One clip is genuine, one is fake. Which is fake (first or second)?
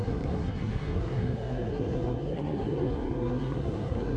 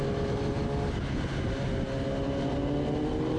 first